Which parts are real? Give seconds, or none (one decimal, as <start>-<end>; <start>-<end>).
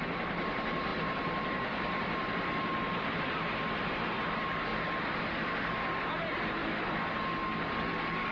0.0-0.9; 3.3-8.3